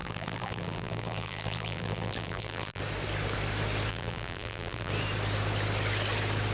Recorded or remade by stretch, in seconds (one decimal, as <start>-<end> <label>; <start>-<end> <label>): 0.0-2.8 remade; 2.8-3.9 recorded; 3.9-4.9 remade; 4.9-6.5 recorded